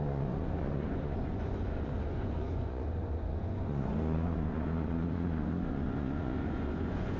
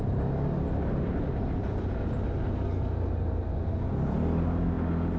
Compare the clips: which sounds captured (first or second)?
second